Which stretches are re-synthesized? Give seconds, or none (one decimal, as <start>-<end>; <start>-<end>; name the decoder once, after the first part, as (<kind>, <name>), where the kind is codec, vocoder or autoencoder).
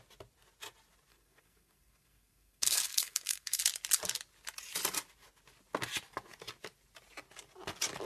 1.1-3.6 (codec, SNAC)